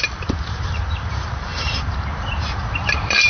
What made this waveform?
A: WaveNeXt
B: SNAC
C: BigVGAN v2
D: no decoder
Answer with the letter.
C